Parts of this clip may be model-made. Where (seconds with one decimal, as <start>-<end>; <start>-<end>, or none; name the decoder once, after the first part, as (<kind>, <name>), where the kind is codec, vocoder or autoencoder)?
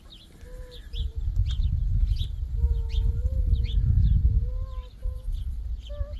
4.2-5.2 (vocoder, BigVGAN v2)